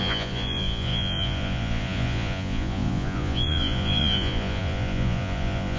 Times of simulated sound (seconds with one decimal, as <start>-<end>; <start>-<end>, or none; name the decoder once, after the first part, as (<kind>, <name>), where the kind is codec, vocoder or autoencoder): 0.0-5.8 (vocoder, Vocos)